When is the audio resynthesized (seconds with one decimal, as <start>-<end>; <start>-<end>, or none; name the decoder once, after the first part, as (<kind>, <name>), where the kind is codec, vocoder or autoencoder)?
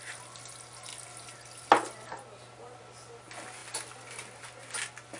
none